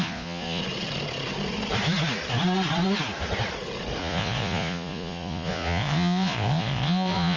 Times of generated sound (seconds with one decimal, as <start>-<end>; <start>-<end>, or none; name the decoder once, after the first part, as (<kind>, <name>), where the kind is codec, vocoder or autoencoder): 0.0-0.6 (vocoder, Vocos); 4.0-7.4

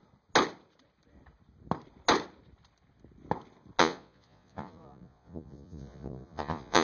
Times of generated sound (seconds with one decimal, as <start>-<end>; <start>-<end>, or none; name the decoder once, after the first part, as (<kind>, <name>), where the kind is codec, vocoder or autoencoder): 3.8-6.8 (vocoder, Vocos)

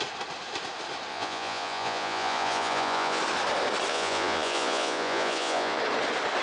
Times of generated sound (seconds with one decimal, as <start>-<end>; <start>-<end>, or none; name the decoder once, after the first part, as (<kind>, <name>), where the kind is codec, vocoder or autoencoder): 1.1-3.2 (vocoder, Vocos); 3.9-5.8

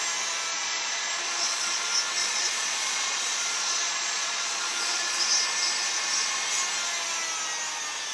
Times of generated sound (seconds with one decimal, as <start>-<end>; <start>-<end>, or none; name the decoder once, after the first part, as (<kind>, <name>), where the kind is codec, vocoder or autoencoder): 0.5-1.8 (vocoder, Vocos); 2.2-5.2

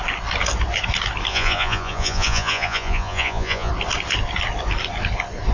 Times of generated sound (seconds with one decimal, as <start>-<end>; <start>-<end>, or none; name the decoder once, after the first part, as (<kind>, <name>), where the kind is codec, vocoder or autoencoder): 1.3-3.7 (vocoder, Vocos)

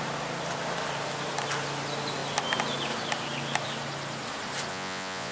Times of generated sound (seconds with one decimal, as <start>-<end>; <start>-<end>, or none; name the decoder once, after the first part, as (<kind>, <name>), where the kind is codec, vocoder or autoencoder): 4.7-5.3 (vocoder, Vocos)

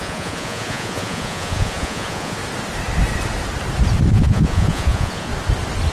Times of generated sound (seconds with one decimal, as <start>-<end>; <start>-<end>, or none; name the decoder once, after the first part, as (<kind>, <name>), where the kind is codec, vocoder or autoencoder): 0.0-2.4 (vocoder, Vocos); 4.1-5.3

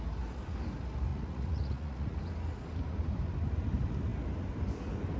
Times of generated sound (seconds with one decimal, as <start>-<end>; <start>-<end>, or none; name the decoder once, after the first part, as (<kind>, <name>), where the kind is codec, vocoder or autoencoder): 1.1-2.2 (vocoder, Vocos)